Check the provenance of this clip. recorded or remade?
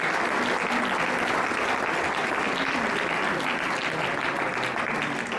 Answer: recorded